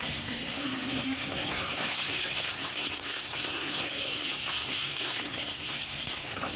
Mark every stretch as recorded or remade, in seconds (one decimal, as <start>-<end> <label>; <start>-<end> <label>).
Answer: 0.0-6.6 remade